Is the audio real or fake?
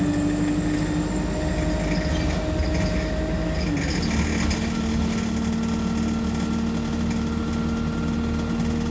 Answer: real